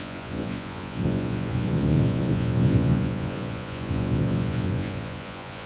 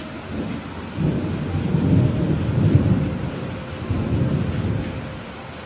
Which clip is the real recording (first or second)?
second